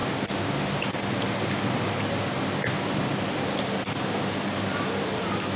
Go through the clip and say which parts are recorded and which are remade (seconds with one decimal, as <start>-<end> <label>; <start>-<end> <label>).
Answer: 0.0-5.6 recorded